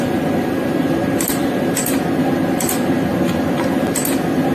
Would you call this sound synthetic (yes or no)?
no